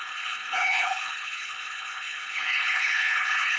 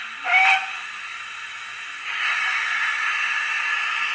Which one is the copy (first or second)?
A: first